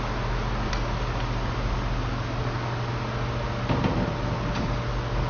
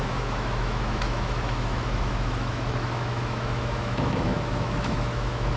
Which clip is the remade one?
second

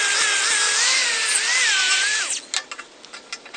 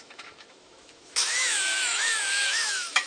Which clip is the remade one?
second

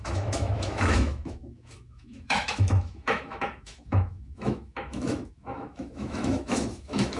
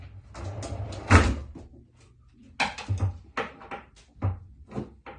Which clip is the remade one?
first